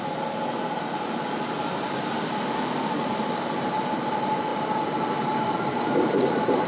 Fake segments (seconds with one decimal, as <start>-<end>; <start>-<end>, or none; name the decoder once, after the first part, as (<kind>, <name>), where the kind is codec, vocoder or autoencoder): 0.0-6.7 (vocoder, BigVGAN v2)

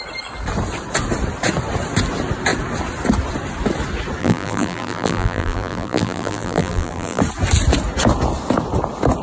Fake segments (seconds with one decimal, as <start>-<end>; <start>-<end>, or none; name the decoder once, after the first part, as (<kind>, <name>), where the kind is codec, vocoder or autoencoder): 4.2-7.2 (vocoder, BigVGAN v2)

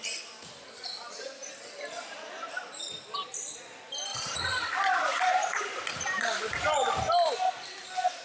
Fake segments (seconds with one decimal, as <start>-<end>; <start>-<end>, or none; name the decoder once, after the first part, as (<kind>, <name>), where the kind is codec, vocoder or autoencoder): 1.4-3.3 (vocoder, BigVGAN v2); 4.1-4.8